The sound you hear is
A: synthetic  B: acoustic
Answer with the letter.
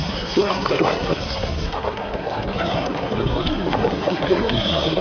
A